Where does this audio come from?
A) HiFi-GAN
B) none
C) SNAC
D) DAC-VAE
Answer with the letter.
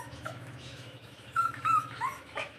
D